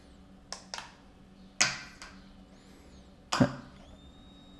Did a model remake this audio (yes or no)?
no